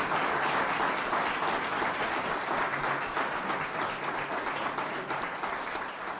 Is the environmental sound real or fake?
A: real